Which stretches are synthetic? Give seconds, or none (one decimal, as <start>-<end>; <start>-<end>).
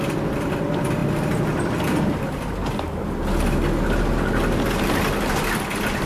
none